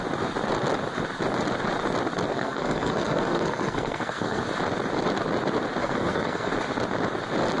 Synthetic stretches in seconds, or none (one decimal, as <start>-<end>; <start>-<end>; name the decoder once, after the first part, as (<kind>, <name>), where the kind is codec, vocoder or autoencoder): 2.3-4.4 (codec, SNAC); 5.8-6.5